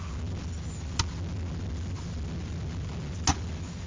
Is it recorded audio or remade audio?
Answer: recorded